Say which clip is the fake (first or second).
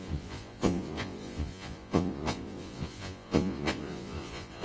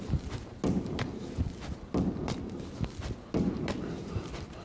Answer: first